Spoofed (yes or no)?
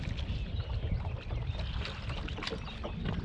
no